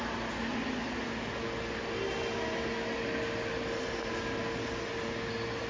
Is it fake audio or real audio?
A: real